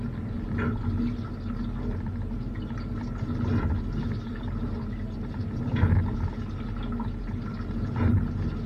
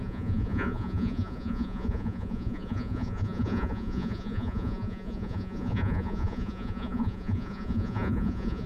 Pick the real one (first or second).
first